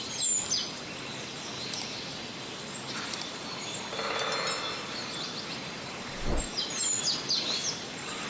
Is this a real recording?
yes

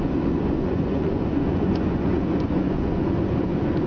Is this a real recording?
no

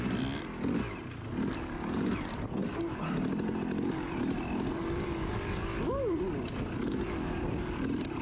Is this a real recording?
yes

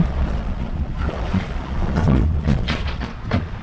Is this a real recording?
no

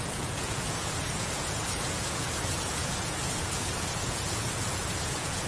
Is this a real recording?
no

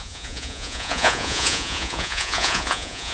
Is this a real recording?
no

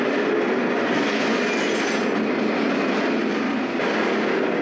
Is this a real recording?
yes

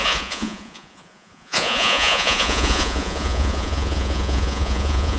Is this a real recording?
no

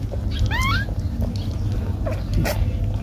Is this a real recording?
yes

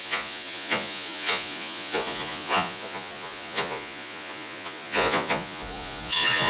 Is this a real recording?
no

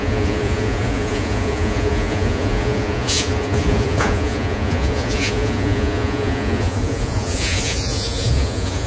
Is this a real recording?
no